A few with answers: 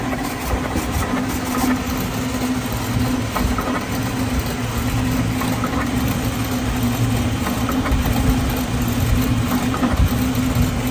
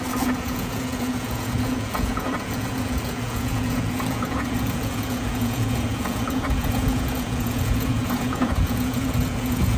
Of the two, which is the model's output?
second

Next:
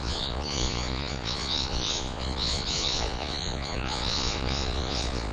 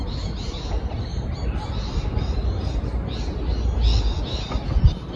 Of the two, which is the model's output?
first